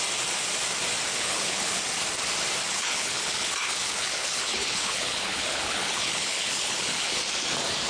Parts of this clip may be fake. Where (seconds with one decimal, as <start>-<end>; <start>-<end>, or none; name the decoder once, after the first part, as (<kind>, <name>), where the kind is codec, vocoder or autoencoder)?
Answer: 1.1-1.8 (codec, HILCodec); 2.7-7.2